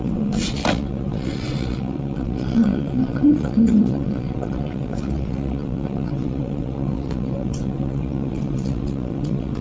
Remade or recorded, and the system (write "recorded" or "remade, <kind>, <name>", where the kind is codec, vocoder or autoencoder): remade, vocoder, WaveNeXt